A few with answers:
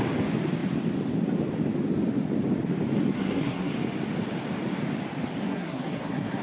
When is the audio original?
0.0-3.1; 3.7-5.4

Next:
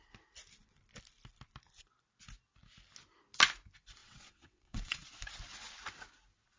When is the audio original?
0.0-4.0; 5.1-6.6